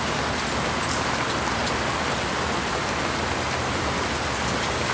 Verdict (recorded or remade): recorded